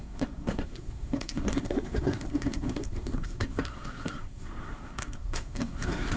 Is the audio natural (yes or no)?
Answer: no